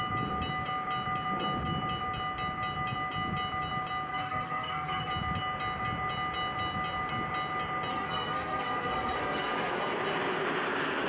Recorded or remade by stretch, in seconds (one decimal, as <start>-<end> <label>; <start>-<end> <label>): 0.0-4.1 recorded; 4.1-5.1 remade; 5.1-7.9 recorded; 7.9-9.8 remade; 9.8-11.1 recorded